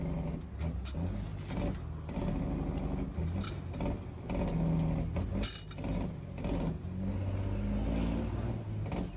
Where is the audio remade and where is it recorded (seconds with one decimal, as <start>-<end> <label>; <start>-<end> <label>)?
0.0-9.2 recorded